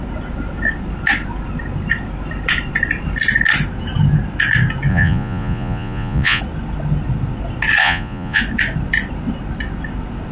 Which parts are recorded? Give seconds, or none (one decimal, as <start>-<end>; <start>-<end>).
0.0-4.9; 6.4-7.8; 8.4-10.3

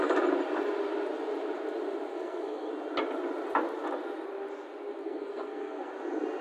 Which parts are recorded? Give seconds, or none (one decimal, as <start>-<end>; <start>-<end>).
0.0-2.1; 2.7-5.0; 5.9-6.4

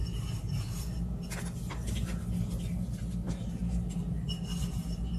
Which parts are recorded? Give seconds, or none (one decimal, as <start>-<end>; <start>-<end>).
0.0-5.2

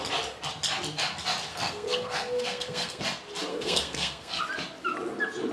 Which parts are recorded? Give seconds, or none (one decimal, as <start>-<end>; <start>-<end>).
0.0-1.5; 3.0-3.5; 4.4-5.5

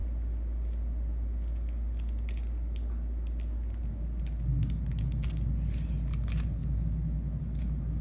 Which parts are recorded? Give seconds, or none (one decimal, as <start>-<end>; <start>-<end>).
0.0-8.0

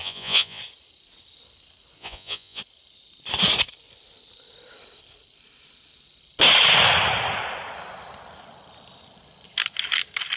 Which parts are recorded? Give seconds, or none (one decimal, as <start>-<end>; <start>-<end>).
0.6-2.0; 2.6-10.4

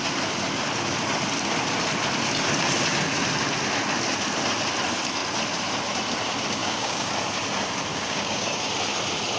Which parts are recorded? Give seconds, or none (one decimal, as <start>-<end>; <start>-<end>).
0.0-6.6; 7.1-7.9; 8.6-9.4

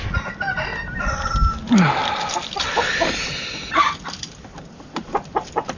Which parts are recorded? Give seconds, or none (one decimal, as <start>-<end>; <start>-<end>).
0.0-5.8